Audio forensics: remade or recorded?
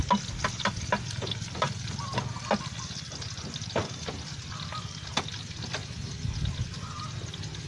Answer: recorded